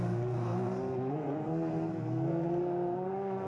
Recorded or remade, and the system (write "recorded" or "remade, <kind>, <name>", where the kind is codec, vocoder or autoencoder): remade, codec, SNAC